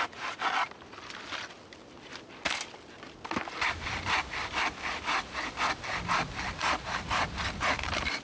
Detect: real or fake real